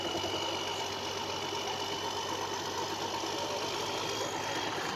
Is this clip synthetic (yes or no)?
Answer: no